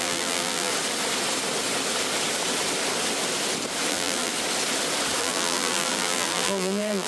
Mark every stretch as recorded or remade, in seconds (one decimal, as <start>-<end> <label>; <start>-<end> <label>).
0.0-0.7 remade; 0.7-3.9 recorded; 3.9-4.3 remade; 4.3-5.2 recorded; 5.2-7.1 remade